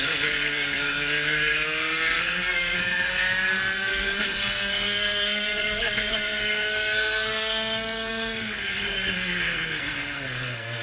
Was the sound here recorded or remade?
remade